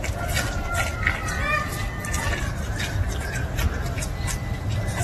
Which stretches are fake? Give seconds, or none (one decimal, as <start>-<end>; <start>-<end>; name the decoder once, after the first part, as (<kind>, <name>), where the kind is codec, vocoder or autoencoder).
none